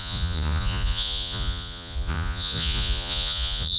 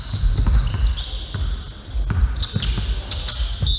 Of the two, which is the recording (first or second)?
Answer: second